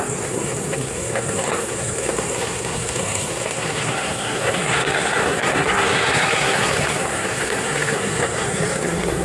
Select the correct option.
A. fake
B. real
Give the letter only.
A